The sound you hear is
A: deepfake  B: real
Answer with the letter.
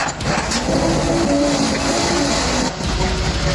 B